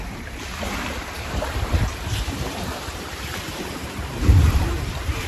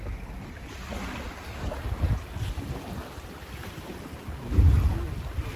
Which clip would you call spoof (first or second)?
first